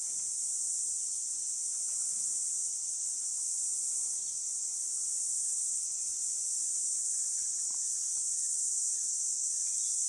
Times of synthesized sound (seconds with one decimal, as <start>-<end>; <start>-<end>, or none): none